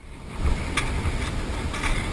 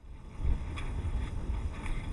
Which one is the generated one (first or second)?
second